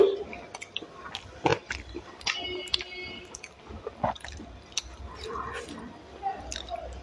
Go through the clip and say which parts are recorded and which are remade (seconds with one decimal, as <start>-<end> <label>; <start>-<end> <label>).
0.0-1.5 recorded; 1.5-5.0 remade; 5.0-7.0 recorded